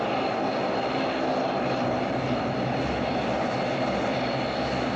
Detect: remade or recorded recorded